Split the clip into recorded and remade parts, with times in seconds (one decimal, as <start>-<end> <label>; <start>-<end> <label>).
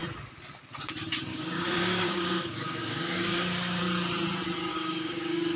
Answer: 0.0-1.3 recorded; 1.3-3.8 remade; 3.8-4.7 recorded; 4.7-5.6 remade